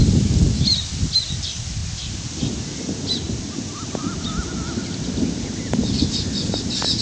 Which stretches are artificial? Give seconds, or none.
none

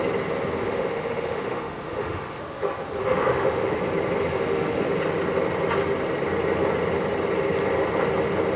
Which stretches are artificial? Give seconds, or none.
0.6-2.4 (autoencoder, DAC-VAE); 3.0-3.8; 4.3-4.9

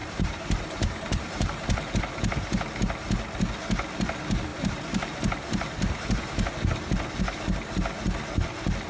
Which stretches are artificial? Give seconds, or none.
0.0-1.9 (vocoder, BigVGAN v2); 4.5-6.5

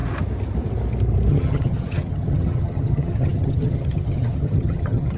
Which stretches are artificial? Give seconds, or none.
1.3-5.2 (vocoder, HiFi-GAN)

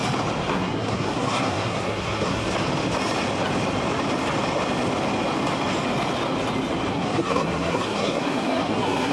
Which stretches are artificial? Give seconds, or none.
0.5-2.4 (codec, SNAC); 6.9-9.1

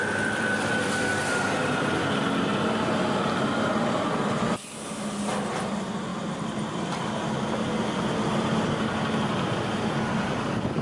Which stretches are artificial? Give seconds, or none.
6.1-6.7 (vocoder, BigVGAN v2)

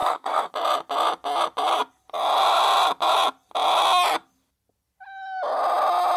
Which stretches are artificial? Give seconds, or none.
0.0-0.5 (codec, SNAC)

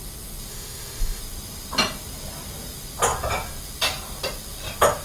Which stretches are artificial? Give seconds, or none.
0.5-1.2 (autoencoder, DAC-VAE)